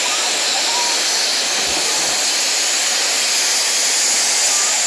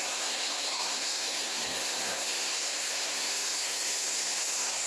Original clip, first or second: first